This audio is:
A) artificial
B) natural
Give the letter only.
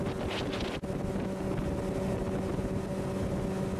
B